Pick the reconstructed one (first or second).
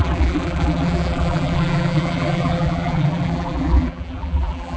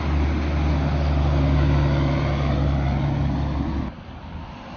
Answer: first